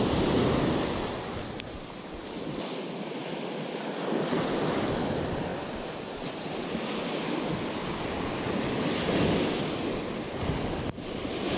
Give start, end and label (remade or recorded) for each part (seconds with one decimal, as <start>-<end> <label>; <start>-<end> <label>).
0.0-3.2 recorded; 3.2-4.0 remade; 4.0-11.6 recorded